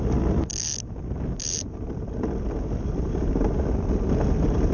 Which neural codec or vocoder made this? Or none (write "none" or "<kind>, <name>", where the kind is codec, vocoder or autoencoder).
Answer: none